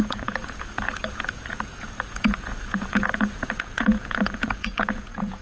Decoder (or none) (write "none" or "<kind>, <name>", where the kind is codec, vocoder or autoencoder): vocoder, Vocos